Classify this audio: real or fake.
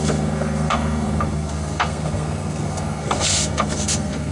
fake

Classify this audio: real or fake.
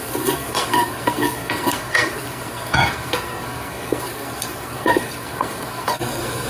fake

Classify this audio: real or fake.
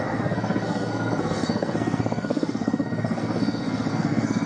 fake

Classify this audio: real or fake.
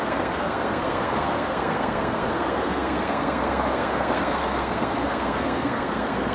fake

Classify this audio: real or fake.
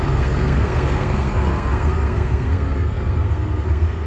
fake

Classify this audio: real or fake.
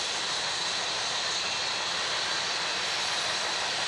real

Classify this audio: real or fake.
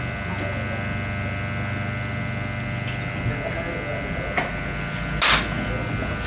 real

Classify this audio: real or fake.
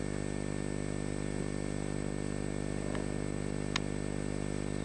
real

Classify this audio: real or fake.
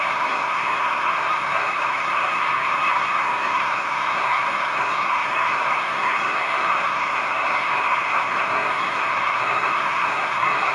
fake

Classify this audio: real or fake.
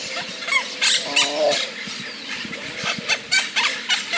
real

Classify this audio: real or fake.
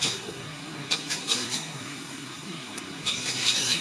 fake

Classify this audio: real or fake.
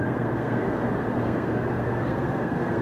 fake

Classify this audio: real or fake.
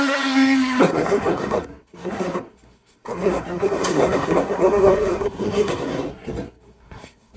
fake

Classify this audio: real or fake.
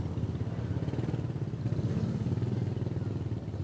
real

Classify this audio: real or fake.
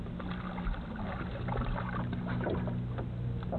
real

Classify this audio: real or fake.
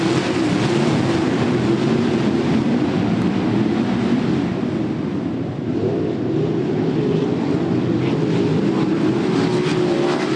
real